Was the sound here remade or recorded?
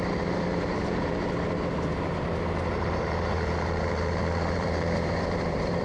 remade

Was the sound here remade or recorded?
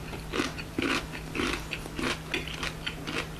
recorded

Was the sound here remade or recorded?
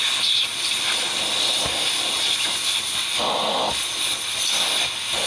recorded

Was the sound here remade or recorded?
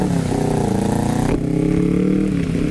recorded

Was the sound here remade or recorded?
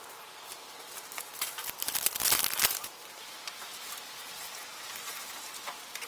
remade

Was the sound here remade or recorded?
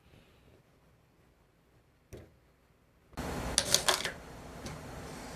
recorded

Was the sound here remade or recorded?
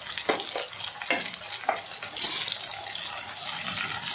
recorded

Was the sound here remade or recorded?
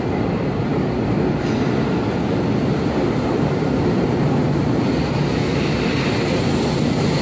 recorded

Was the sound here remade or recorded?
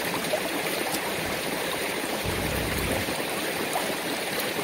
remade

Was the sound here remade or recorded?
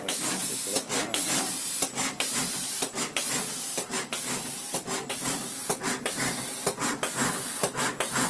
recorded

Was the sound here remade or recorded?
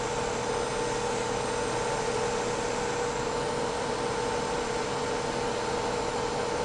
recorded